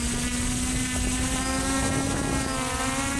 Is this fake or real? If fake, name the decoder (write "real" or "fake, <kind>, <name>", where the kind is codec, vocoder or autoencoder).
real